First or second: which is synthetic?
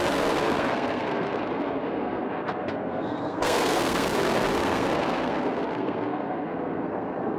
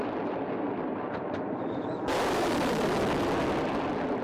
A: first